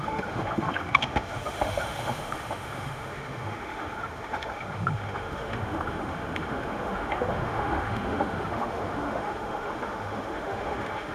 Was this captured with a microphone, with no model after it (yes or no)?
no